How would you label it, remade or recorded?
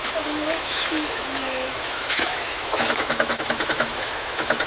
remade